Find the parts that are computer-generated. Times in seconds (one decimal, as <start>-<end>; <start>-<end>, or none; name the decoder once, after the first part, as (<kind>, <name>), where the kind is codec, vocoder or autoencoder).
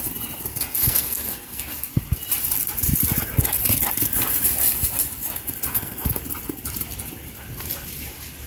0.5-2.0 (codec, SNAC); 5.7-6.2